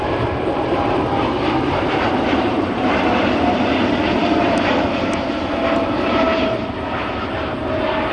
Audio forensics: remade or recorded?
remade